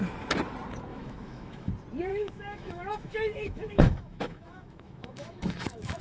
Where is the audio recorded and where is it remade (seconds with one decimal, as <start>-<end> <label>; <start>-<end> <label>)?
0.0-0.9 recorded; 0.9-1.7 remade; 1.7-2.1 recorded; 2.1-6.0 remade